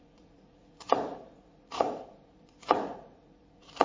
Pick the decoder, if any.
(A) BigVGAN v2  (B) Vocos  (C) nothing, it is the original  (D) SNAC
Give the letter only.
B